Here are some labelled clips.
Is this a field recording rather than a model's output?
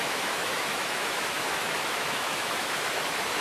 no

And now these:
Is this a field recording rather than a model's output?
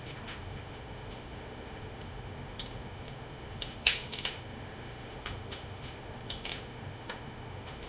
no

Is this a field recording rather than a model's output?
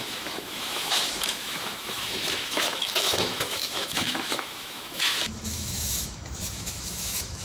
no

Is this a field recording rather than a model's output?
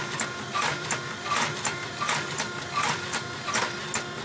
yes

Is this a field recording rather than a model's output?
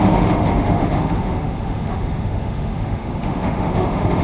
no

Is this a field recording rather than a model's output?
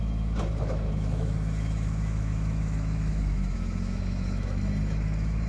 no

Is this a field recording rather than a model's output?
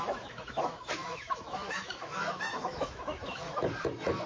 no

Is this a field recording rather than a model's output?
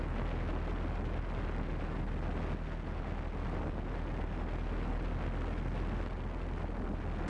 yes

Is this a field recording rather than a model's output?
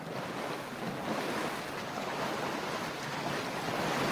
yes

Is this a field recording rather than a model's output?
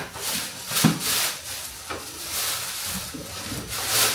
yes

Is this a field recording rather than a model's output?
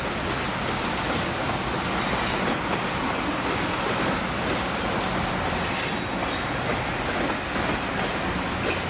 yes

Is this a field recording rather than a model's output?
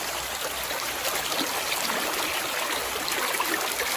yes